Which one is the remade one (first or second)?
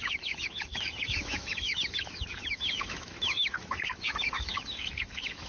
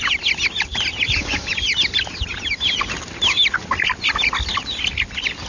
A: first